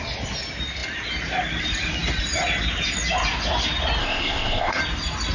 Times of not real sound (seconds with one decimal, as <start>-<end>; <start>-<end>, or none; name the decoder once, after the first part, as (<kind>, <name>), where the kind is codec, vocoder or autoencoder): 4.0-4.8 (codec, ZipCodec)